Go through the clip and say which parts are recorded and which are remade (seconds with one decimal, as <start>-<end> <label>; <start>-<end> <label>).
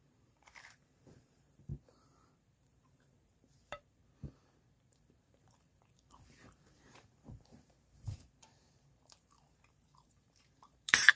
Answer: 0.0-4.0 remade; 4.0-4.8 recorded; 4.8-11.2 remade